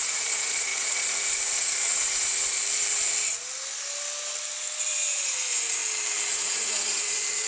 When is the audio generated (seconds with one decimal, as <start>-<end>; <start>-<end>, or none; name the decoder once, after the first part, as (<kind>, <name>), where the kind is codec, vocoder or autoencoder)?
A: 0.0-2.6 (vocoder, Vocos); 4.9-5.8; 6.3-7.5